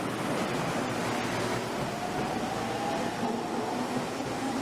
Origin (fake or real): real